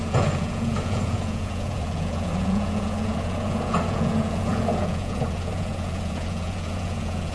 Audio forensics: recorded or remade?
remade